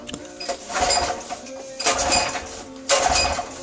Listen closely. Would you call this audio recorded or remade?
recorded